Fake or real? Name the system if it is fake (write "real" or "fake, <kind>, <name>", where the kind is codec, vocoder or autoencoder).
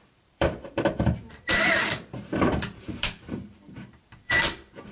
fake, vocoder, BigVGAN v2